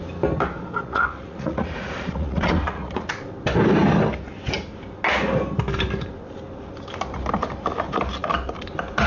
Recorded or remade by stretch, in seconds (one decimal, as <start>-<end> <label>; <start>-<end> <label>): 0.0-0.8 recorded; 0.8-3.1 remade; 3.1-9.1 recorded